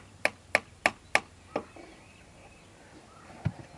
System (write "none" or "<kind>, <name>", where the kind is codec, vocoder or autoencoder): none